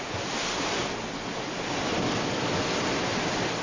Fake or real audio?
real